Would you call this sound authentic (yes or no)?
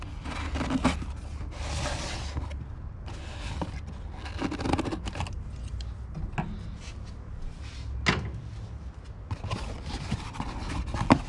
yes